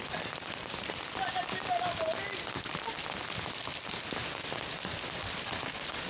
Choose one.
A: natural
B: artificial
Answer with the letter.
A